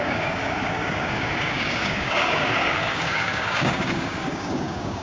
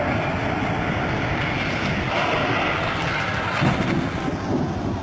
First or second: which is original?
second